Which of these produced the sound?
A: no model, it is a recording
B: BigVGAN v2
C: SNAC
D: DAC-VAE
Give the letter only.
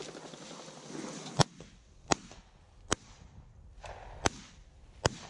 A